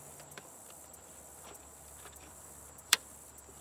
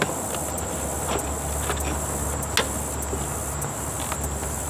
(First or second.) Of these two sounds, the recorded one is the second